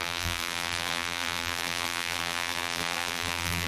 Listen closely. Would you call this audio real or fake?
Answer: fake